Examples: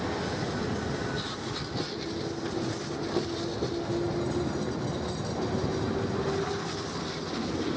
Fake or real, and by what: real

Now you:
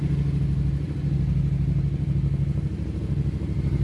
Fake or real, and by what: real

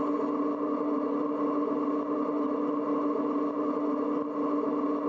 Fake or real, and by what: real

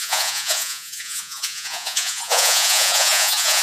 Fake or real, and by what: fake, vocoder, Vocos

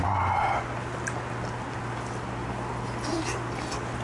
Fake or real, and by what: real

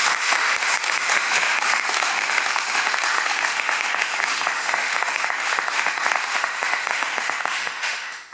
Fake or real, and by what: fake, autoencoder, DAC-VAE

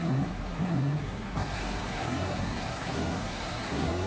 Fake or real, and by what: fake, codec, SNAC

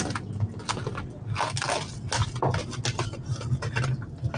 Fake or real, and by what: real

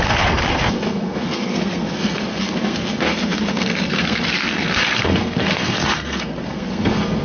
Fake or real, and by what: fake, codec, SNAC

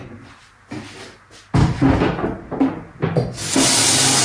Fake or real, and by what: real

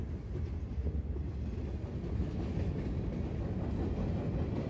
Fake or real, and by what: real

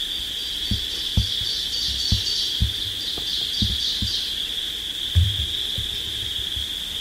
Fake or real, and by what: real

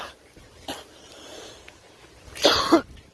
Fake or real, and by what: fake, vocoder, BigVGAN v2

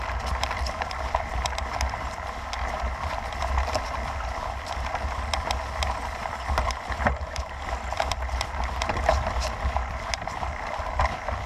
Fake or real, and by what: fake, vocoder, BigVGAN v2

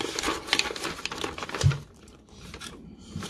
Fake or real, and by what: fake, vocoder, BigVGAN v2